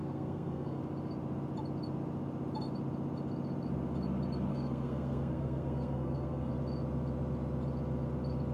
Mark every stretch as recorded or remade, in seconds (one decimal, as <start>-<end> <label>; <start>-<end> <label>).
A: 0.0-0.8 remade; 0.8-4.5 recorded; 4.5-6.5 remade; 6.5-8.5 recorded